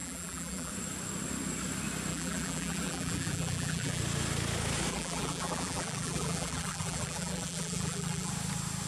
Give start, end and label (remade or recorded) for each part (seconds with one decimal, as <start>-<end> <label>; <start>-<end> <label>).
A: 0.0-0.7 remade; 0.7-2.1 recorded; 2.1-4.0 remade; 4.0-4.9 recorded; 4.9-8.3 remade; 8.3-8.9 recorded